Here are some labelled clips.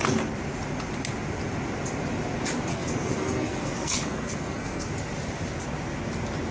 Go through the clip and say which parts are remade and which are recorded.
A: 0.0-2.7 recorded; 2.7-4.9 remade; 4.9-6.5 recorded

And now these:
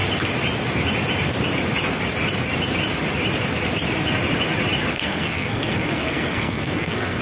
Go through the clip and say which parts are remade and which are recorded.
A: 0.0-4.9 recorded; 4.9-7.2 remade

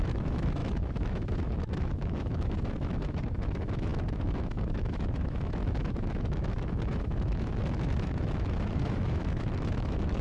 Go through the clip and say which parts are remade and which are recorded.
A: 0.0-10.2 remade

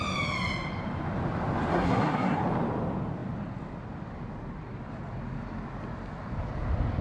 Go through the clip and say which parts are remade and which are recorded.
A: 0.0-1.7 recorded; 1.7-2.4 remade; 2.4-7.0 recorded

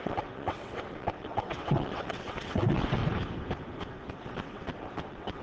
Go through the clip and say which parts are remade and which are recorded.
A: 0.0-3.0 remade; 3.0-4.1 recorded; 4.1-5.4 remade

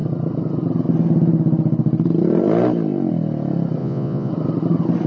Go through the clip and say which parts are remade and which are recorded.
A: 0.0-3.8 recorded; 3.8-4.3 remade; 4.3-5.1 recorded

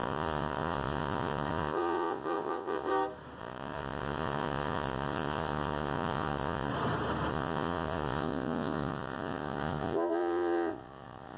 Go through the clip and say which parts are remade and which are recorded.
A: 0.0-2.9 remade; 2.9-3.4 recorded; 3.4-6.7 remade; 6.7-7.3 recorded; 7.3-11.4 remade